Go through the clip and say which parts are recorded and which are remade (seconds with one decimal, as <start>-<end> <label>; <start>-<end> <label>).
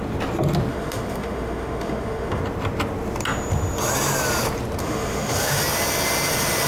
0.0-0.7 recorded; 0.7-2.4 remade; 2.4-4.8 recorded; 4.8-5.6 remade; 5.6-6.7 recorded